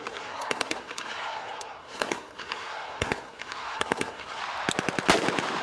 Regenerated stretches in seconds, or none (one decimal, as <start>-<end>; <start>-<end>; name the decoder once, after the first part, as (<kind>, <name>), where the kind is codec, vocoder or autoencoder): 0.0-4.4 (codec, SNAC)